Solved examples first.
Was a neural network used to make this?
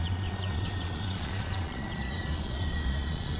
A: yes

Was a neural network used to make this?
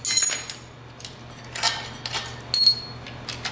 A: no